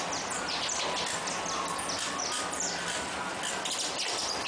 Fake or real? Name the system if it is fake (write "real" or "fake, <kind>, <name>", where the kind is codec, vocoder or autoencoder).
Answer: real